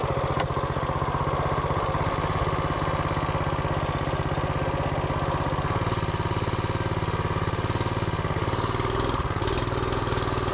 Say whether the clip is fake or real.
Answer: real